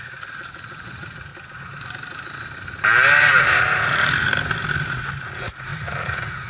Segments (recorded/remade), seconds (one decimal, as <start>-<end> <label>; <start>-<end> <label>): 0.0-1.3 remade; 1.3-3.4 recorded; 3.4-4.3 remade; 4.3-4.8 recorded; 4.8-6.5 remade